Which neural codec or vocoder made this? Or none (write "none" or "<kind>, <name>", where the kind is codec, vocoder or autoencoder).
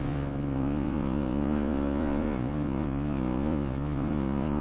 vocoder, Vocos